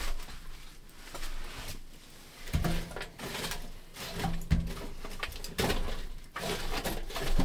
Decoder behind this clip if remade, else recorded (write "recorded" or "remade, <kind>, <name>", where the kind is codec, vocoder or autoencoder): recorded